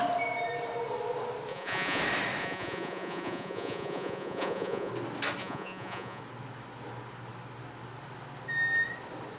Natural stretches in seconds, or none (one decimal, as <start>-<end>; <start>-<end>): 0.0-1.5; 2.0-2.4; 4.9-5.4; 6.2-9.4